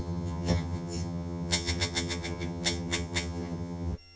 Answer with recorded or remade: remade